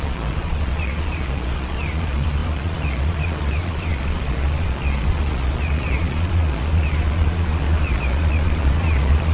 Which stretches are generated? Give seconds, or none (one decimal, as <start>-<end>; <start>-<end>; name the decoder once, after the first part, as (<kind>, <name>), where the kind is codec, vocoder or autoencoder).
0.0-9.3 (vocoder, Vocos)